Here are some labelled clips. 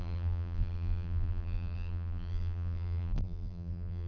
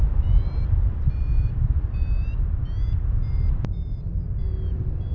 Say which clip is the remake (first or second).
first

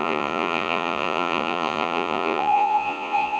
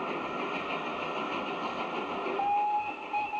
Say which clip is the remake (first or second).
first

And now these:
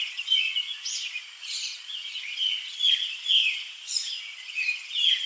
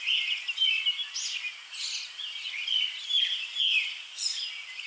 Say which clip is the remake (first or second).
first